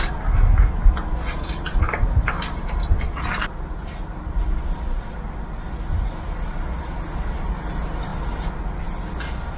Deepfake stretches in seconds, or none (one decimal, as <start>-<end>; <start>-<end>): none